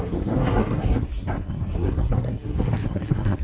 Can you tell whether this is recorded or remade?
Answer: remade